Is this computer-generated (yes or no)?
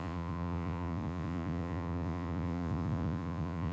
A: yes